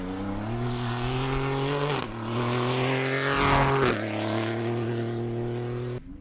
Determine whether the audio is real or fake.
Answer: real